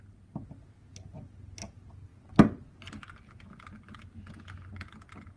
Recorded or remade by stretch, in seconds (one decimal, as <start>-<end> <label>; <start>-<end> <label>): 0.0-5.4 recorded